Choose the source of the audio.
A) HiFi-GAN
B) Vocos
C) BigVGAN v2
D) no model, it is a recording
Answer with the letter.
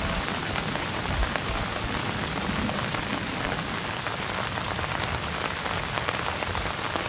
D